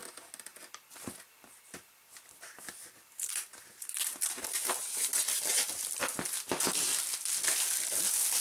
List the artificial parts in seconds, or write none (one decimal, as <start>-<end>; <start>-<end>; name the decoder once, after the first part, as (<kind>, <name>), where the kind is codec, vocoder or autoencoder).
2.0-6.5 (vocoder, BigVGAN v2)